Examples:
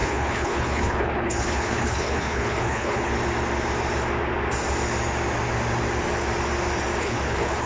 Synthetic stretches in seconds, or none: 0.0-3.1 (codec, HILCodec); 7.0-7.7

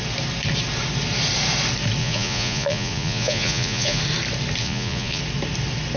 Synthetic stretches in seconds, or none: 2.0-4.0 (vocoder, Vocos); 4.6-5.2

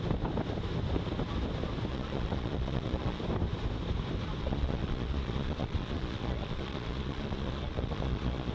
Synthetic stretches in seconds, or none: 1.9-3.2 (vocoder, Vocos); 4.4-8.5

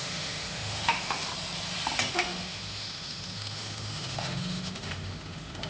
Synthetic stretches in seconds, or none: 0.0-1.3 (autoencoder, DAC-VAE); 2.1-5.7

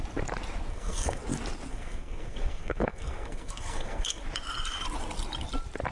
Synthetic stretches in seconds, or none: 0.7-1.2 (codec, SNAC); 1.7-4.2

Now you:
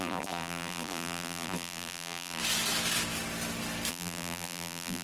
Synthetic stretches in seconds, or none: 0.0-2.4 (vocoder, BigVGAN v2); 3.9-5.0

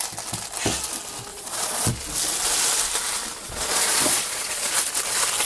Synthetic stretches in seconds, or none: 1.3-1.9 (vocoder, Vocos); 3.4-4.7

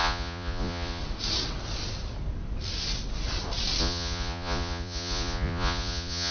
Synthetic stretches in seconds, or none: 0.0-1.0 (vocoder, Vocos); 3.8-6.3